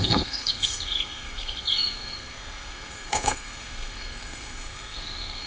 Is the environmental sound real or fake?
fake